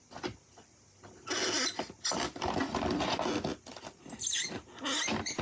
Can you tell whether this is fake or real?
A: real